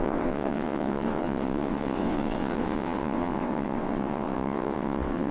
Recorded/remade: remade